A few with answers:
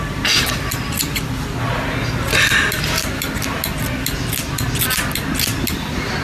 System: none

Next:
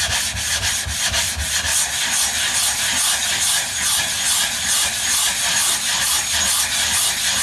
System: none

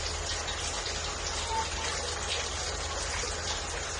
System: none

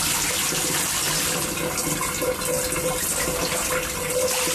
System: none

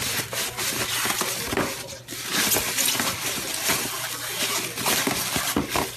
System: none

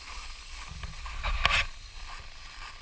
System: none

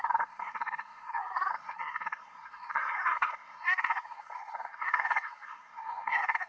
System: codec, SNAC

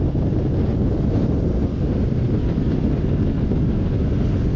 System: none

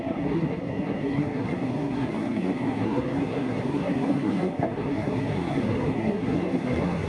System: codec, SNAC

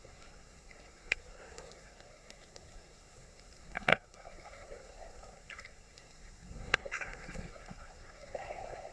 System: codec, SNAC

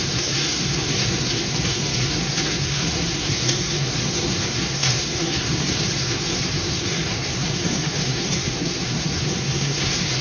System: codec, SNAC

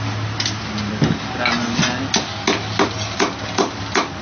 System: none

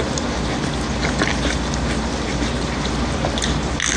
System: none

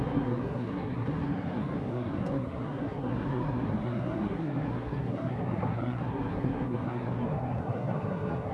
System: codec, SNAC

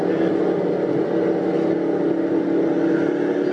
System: none